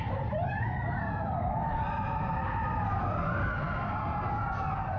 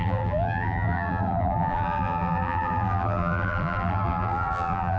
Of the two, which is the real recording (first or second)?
first